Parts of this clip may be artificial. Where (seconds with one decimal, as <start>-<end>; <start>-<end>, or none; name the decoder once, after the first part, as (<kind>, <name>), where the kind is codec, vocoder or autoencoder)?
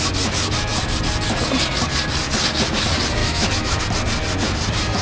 3.2-3.8 (autoencoder, DAC-VAE)